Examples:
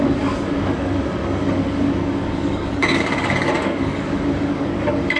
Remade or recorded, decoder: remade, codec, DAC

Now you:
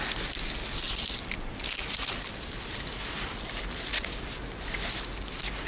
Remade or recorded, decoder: recorded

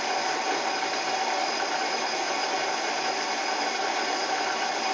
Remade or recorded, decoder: recorded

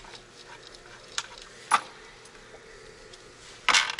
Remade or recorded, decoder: recorded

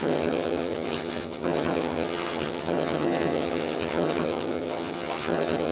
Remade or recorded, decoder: remade, vocoder, HiFi-GAN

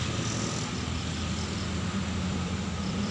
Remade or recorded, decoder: recorded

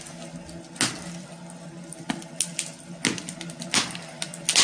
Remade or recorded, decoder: recorded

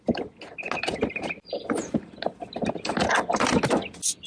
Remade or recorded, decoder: recorded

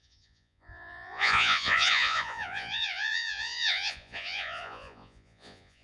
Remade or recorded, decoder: remade, vocoder, Vocos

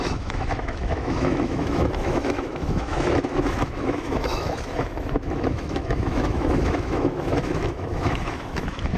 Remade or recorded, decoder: remade, autoencoder, DAC-VAE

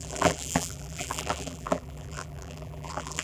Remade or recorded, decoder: remade, vocoder, BigVGAN v2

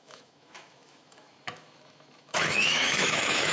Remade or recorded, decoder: remade, autoencoder, DAC-VAE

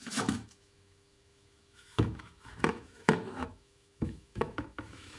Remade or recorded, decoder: remade, autoencoder, DAC-VAE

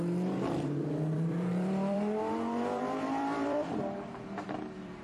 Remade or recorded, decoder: remade, vocoder, BigVGAN v2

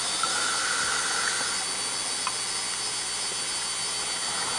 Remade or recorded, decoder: recorded